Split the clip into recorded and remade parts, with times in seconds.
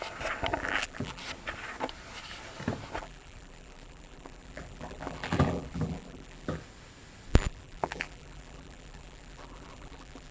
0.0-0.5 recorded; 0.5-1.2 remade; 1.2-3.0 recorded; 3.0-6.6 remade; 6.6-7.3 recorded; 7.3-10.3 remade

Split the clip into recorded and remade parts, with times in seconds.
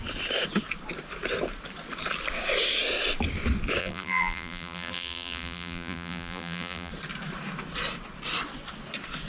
0.0-3.8 recorded; 3.8-6.9 remade; 6.9-9.3 recorded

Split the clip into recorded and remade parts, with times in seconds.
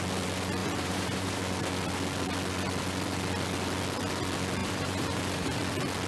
0.0-0.6 recorded; 0.6-1.4 remade; 1.4-4.6 recorded; 4.6-5.6 remade; 5.6-6.1 recorded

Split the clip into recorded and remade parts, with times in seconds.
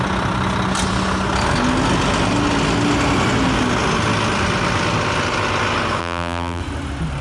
0.0-6.0 recorded; 6.0-6.6 remade; 6.6-7.2 recorded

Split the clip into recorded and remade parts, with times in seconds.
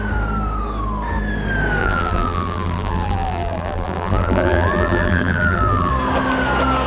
0.0-1.8 recorded; 1.8-5.9 remade; 5.9-6.9 recorded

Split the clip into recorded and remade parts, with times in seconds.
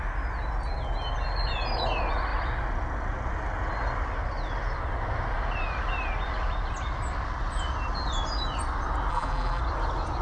0.0-9.1 recorded; 9.1-9.6 remade; 9.6-10.2 recorded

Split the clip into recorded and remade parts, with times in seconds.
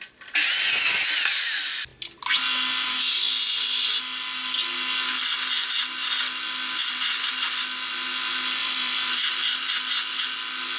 0.0-6.8 recorded; 6.8-7.3 remade; 7.3-8.6 recorded; 8.6-9.3 remade; 9.3-10.8 recorded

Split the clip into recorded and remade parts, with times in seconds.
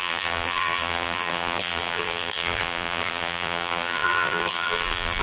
0.0-5.2 remade